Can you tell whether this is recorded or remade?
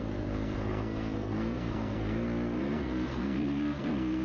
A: remade